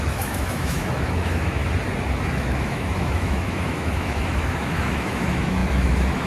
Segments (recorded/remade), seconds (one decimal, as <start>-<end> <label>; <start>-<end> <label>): 0.0-1.6 remade; 1.6-2.3 recorded; 2.3-6.3 remade